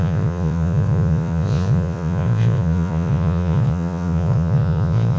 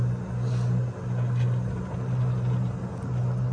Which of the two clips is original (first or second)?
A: second